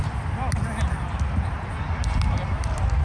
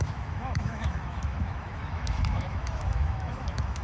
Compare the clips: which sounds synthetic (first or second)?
second